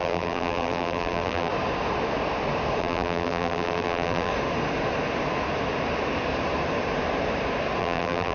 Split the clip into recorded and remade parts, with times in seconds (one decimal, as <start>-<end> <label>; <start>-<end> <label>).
0.0-1.5 remade; 1.5-2.8 recorded; 2.8-4.3 remade; 4.3-7.8 recorded; 7.8-8.3 remade